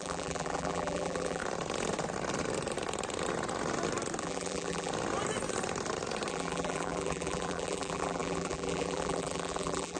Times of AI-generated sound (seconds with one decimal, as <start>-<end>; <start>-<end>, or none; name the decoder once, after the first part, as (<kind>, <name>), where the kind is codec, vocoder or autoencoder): 0.0-1.4 (vocoder, BigVGAN v2); 4.2-4.9; 6.3-10.0